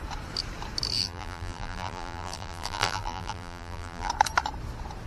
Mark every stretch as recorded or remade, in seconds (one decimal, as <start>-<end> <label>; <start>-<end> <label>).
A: 0.0-1.0 recorded; 1.0-4.1 remade; 4.1-5.1 recorded

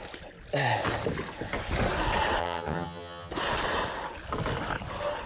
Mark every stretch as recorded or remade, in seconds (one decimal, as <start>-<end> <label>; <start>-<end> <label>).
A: 0.0-2.4 recorded; 2.4-3.3 remade; 3.3-5.3 recorded

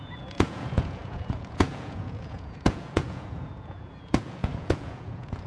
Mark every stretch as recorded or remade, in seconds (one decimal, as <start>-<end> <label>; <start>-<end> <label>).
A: 0.0-5.5 remade